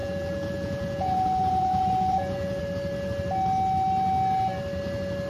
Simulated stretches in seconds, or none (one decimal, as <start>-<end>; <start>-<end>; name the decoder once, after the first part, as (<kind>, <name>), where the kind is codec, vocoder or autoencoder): 0.0-2.6 (vocoder, Vocos)